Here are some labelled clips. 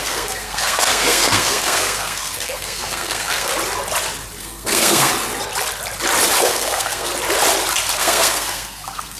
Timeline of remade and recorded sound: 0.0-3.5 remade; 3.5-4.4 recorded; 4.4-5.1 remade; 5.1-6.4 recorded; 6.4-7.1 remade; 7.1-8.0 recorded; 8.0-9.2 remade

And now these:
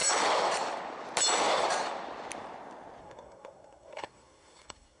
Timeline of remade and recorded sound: 0.0-3.0 recorded; 3.0-5.0 remade

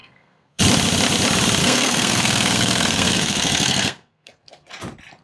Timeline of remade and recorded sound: 0.0-0.6 remade; 0.6-1.6 recorded; 1.6-4.7 remade; 4.7-5.2 recorded

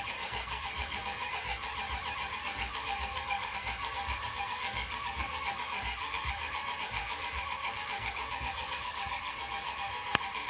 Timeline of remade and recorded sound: 0.0-1.7 remade; 1.7-2.3 recorded; 2.3-10.5 remade

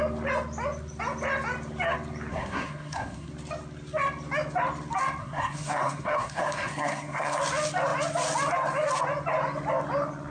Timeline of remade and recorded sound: 0.0-2.3 recorded; 2.3-3.3 remade; 3.3-5.2 recorded; 5.2-7.4 remade; 7.4-10.3 recorded

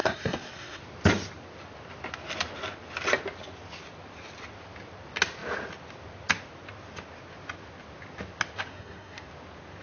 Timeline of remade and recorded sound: 0.0-0.8 remade; 0.8-8.7 recorded; 8.7-9.3 remade; 9.3-9.8 recorded

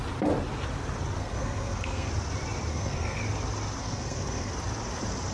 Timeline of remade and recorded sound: 0.0-1.2 recorded; 1.2-2.1 remade; 2.1-2.7 recorded; 2.7-3.2 remade; 3.2-3.8 recorded; 3.8-4.5 remade; 4.5-5.3 recorded

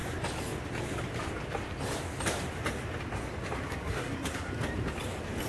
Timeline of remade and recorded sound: 0.0-3.7 recorded; 3.7-4.5 remade; 4.5-5.5 recorded